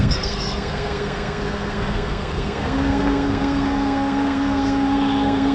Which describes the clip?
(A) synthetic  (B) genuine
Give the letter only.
A